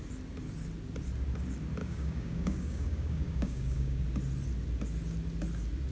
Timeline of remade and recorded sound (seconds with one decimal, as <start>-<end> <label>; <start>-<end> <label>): 0.0-1.8 recorded; 1.8-4.0 remade; 4.0-5.9 recorded